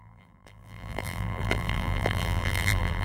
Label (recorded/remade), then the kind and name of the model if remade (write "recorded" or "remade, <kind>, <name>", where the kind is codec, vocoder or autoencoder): remade, vocoder, BigVGAN v2